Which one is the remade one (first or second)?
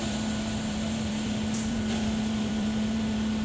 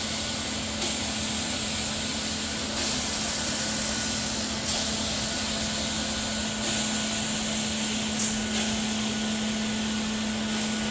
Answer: first